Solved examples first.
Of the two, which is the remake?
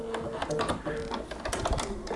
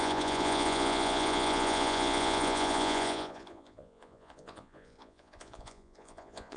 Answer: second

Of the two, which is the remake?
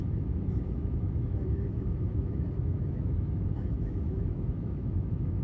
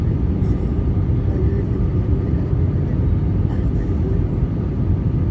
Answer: first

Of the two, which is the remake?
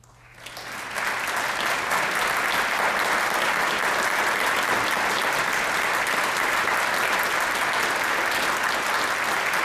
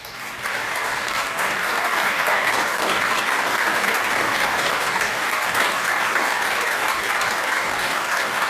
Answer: second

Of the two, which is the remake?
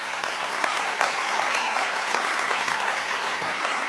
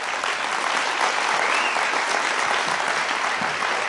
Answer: first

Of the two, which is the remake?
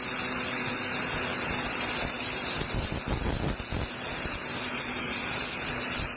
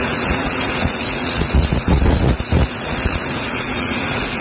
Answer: second